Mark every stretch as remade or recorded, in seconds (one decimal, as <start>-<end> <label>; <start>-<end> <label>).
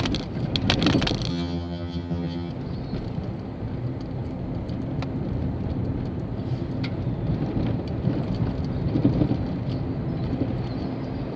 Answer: 0.0-1.3 recorded; 1.3-2.5 remade; 2.5-11.4 recorded